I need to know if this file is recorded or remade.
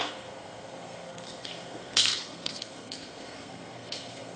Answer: remade